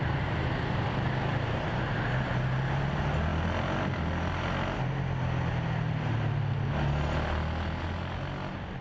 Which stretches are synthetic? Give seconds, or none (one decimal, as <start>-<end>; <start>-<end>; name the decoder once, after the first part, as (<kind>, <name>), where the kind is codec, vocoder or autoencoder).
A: none